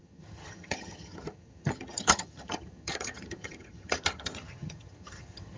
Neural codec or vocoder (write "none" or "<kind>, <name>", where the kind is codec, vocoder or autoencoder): vocoder, HiFi-GAN